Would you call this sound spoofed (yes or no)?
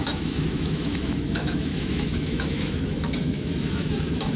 yes